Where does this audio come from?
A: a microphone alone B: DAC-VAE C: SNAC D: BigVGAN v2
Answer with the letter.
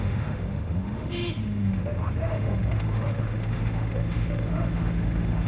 B